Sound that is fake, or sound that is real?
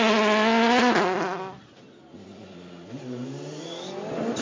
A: real